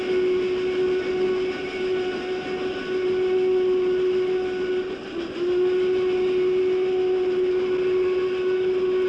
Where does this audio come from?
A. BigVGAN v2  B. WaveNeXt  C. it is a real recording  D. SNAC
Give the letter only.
C